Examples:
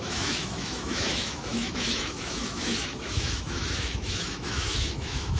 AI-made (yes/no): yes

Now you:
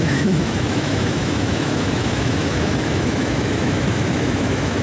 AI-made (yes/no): yes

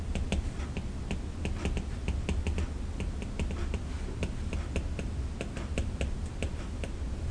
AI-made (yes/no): no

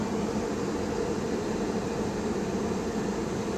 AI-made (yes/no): no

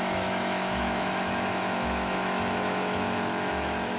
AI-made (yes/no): yes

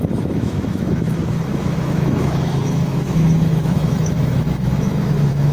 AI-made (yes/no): yes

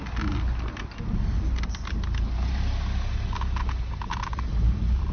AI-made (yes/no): no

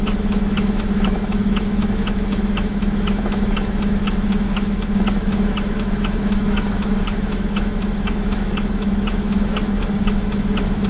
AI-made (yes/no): yes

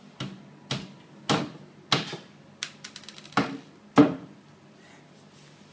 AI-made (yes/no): no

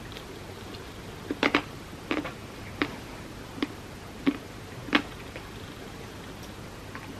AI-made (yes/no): no